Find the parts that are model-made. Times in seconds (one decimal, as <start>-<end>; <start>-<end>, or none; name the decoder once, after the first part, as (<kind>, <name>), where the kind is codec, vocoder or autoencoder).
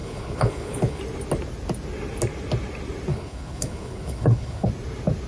0.0-1.0 (codec, HILCodec); 3.1-4.7